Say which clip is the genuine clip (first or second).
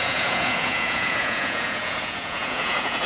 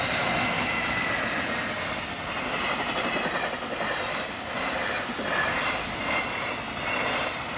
second